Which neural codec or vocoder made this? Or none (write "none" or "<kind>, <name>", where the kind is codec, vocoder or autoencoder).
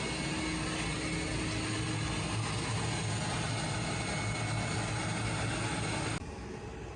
none